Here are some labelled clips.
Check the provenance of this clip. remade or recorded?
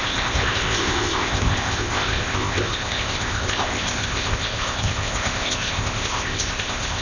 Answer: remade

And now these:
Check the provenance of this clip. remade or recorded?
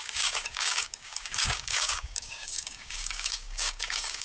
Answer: remade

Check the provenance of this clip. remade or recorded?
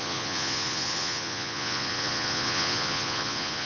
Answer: remade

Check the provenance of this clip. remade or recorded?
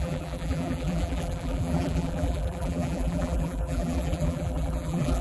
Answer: remade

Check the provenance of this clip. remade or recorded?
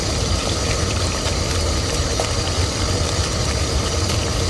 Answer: recorded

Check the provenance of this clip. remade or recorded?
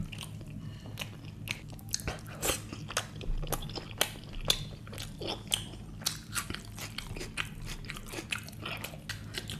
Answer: recorded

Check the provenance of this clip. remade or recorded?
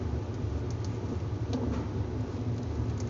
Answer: recorded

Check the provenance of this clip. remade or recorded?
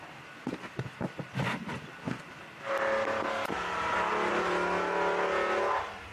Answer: recorded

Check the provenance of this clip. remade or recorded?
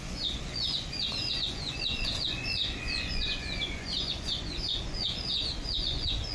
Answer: remade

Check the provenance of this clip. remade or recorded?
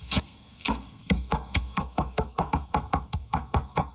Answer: remade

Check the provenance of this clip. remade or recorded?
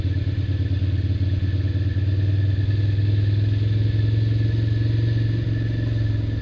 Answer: recorded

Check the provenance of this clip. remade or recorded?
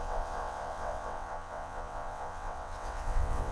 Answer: remade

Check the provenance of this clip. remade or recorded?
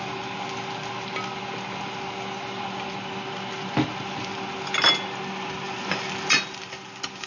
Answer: recorded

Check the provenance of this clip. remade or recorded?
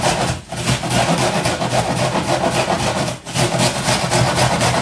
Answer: recorded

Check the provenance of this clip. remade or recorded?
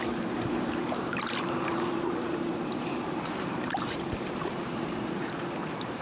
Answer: remade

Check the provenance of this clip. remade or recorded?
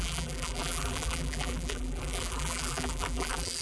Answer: remade